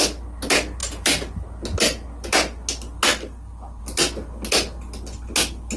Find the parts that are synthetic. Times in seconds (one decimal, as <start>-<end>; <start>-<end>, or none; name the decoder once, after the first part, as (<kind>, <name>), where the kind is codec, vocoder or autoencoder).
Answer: 0.8-1.4 (vocoder, BigVGAN v2)